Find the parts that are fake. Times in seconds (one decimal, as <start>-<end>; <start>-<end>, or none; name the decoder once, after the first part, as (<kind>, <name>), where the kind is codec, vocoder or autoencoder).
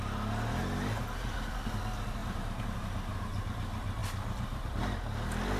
2.2-3.4 (vocoder, BigVGAN v2)